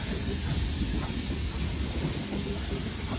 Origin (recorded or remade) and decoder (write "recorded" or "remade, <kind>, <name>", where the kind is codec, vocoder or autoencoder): recorded